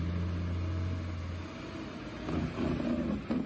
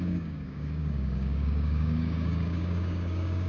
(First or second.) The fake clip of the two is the second